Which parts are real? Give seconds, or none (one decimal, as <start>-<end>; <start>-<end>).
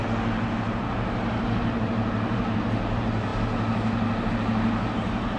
none